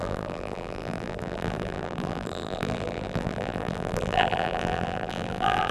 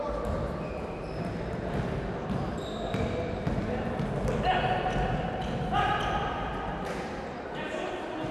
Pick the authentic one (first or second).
second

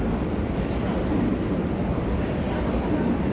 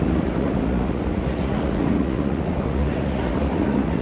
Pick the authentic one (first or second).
first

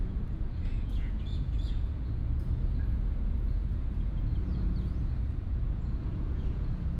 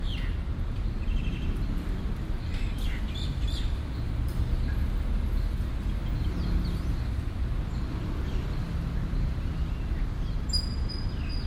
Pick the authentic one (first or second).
second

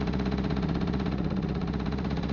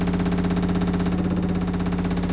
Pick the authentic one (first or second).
second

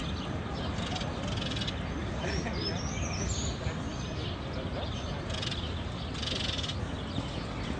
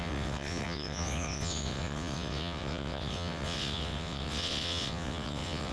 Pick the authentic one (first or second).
first